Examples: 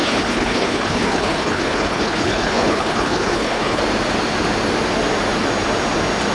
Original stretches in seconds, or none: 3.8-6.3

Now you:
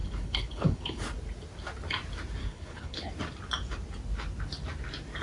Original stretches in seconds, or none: 1.0-2.4; 3.1-5.2